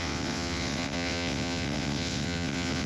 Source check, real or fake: fake